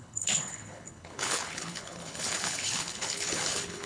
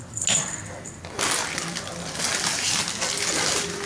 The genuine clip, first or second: second